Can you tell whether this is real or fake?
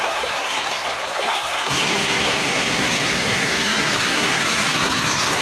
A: fake